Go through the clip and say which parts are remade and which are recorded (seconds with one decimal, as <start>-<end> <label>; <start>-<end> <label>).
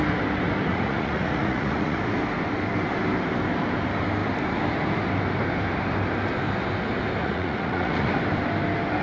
0.0-0.7 recorded; 0.7-2.0 remade; 2.0-7.2 recorded; 7.2-8.1 remade; 8.1-9.0 recorded